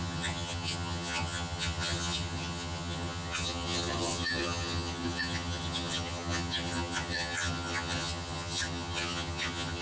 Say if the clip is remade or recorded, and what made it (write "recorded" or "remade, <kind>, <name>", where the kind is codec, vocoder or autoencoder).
remade, vocoder, HiFi-GAN